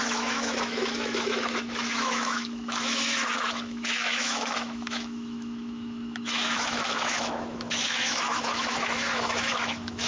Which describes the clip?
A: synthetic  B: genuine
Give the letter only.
A